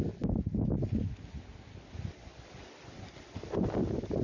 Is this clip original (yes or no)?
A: yes